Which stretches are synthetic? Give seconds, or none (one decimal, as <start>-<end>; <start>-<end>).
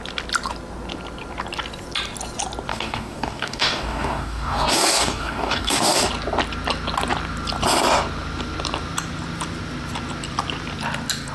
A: 2.7-6.1